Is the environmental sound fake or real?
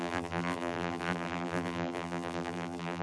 fake